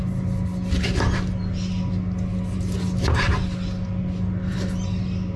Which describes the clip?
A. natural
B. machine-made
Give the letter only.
A